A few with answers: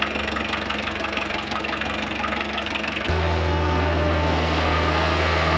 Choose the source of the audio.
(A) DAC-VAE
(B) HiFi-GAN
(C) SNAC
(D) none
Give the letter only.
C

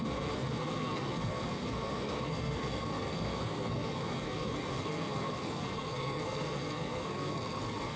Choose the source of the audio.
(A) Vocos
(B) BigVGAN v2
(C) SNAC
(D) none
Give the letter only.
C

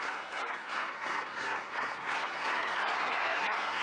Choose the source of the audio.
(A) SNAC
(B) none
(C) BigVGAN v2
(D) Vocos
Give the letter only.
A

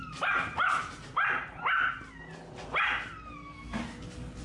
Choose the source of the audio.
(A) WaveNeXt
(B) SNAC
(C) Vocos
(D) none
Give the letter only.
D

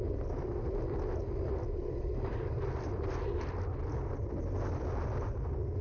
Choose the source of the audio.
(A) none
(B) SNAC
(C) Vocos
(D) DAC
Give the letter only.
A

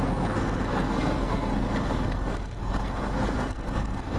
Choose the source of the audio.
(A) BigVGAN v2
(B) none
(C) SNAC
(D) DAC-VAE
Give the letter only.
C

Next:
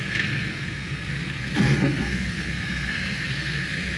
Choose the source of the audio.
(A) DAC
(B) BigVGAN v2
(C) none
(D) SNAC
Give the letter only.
D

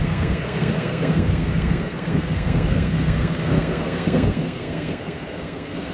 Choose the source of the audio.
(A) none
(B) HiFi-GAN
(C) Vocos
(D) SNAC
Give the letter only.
D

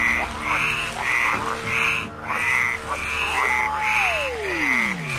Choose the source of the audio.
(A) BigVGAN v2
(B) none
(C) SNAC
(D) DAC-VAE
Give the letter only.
B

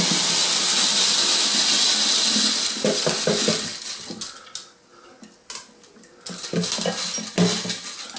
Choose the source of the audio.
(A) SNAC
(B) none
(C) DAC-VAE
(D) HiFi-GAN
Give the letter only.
B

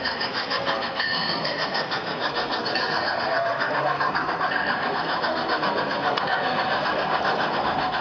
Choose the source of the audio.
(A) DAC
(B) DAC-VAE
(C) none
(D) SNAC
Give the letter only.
D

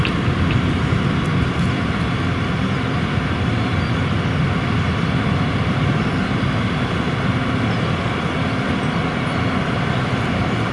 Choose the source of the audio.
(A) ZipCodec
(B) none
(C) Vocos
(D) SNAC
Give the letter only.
B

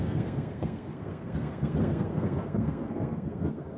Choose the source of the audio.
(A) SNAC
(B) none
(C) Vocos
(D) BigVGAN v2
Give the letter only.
A